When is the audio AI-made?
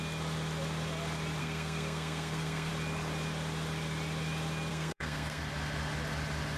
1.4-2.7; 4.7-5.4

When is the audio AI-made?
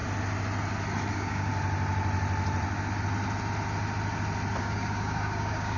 1.1-1.5; 4.6-5.8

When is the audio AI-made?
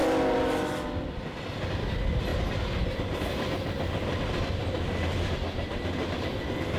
none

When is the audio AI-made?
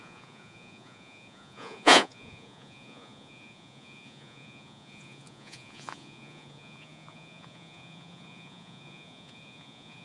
0.0-10.0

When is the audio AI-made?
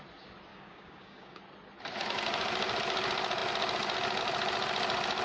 0.5-1.4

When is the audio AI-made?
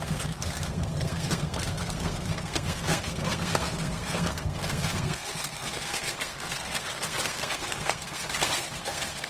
0.0-9.3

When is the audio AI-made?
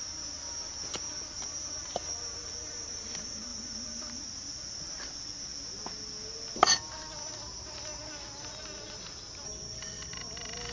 none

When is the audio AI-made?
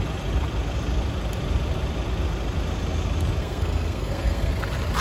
3.4-4.5